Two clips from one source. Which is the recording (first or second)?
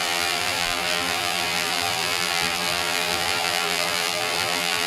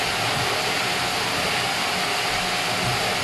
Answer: second